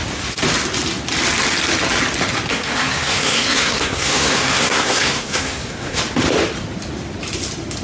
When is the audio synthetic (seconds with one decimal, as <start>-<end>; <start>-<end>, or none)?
2.5-6.0